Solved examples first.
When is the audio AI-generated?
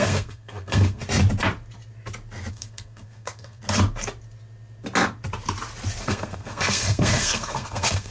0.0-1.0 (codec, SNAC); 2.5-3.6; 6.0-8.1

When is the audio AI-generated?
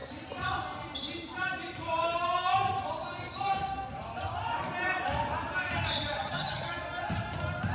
6.2-6.8 (vocoder, HiFi-GAN)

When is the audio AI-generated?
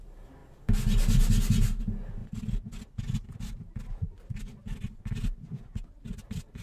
none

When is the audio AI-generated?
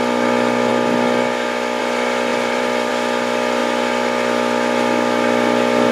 2.3-2.9 (vocoder, BigVGAN v2)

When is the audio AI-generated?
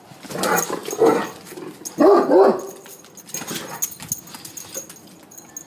none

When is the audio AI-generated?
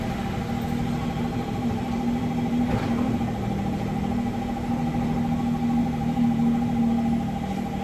1.0-3.2 (vocoder, BigVGAN v2); 5.8-6.8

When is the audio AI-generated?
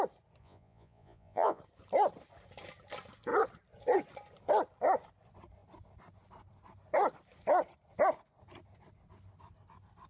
0.4-1.6 (vocoder, Vocos)